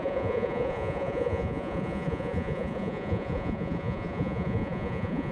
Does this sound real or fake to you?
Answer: fake